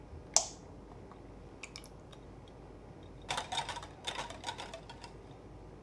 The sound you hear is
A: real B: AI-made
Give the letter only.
A